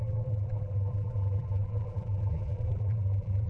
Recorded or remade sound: remade